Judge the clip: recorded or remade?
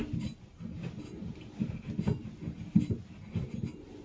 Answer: recorded